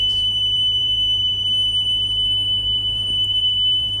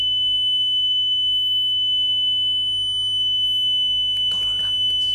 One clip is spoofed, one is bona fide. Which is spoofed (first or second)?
first